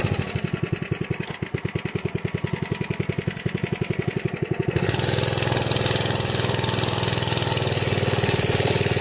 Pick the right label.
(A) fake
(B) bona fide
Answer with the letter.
B